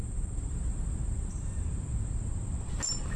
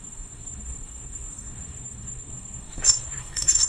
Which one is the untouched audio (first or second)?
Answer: first